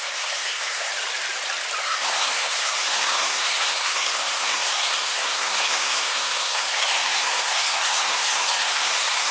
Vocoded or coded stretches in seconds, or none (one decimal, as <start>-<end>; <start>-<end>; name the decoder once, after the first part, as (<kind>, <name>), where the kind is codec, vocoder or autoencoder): 0.0-0.9 (codec, SNAC); 1.8-9.3